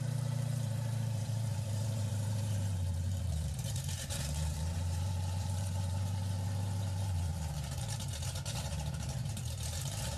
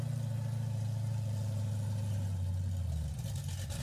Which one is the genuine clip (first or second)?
second